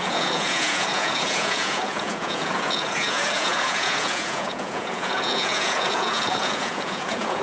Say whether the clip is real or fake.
fake